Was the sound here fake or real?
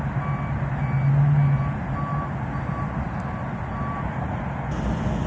real